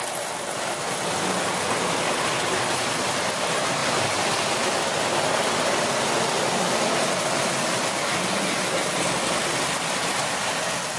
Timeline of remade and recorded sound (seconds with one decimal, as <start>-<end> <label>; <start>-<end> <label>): 0.0-11.0 recorded